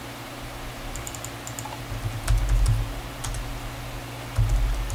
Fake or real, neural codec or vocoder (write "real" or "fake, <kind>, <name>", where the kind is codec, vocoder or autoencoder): real